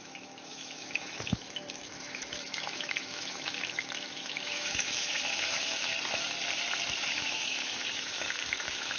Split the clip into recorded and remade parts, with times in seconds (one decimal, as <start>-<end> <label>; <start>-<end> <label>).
0.0-5.9 remade; 5.9-7.0 recorded; 7.0-9.0 remade